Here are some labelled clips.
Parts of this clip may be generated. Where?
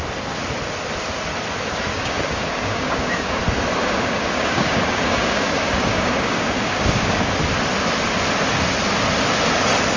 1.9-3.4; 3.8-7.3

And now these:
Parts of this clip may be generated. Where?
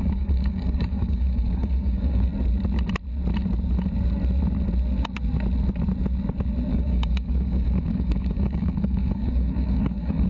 0.0-2.3; 6.7-10.3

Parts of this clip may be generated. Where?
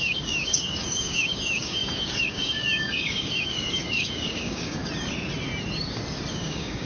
0.0-4.8; 6.3-6.9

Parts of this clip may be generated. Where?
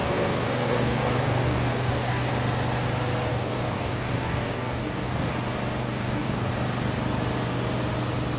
0.0-2.3; 3.3-5.3; 5.8-6.5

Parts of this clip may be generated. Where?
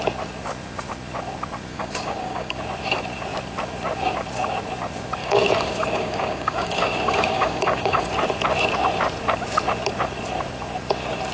1.7-2.6; 5.2-8.1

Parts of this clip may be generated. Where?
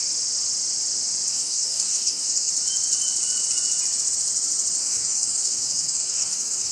1.3-2.5; 4.8-6.7